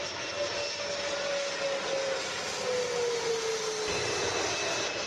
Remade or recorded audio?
recorded